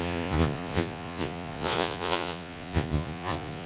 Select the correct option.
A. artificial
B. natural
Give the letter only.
A